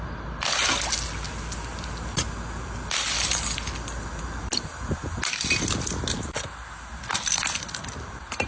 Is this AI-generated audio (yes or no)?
no